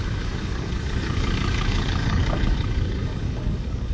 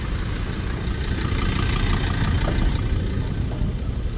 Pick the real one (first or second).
second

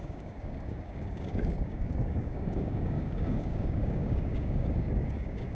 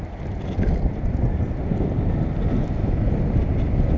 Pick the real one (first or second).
second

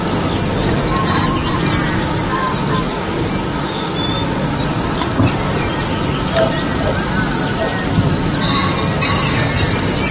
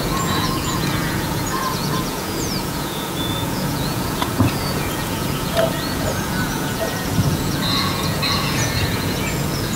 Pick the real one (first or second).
first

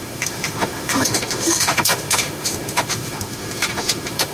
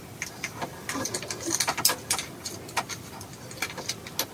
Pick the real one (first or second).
second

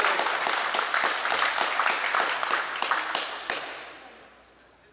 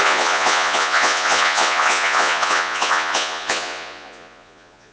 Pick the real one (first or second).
first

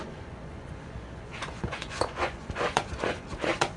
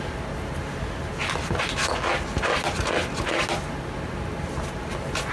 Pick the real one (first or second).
second